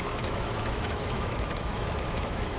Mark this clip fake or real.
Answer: fake